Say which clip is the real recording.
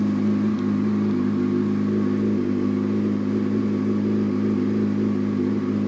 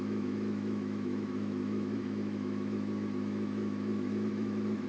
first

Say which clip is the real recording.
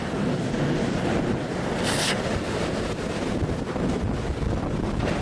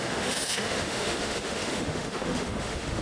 first